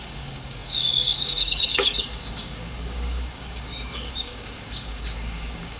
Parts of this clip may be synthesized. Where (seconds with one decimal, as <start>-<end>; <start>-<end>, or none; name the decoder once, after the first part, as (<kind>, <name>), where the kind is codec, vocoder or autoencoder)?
0.0-5.8 (codec, DAC)